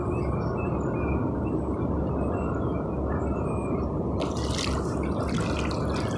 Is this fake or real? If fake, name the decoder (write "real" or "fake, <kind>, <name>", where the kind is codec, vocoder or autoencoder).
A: real